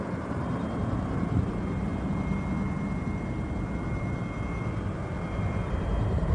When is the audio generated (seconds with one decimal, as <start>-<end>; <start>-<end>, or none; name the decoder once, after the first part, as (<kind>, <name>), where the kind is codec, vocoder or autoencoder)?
0.0-1.9 (vocoder, BigVGAN v2); 5.7-6.3